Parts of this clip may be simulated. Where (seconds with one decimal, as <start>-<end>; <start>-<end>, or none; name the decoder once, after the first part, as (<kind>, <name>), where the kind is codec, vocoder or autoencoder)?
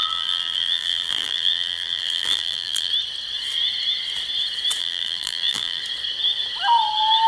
0.0-2.9 (vocoder, BigVGAN v2); 4.8-5.8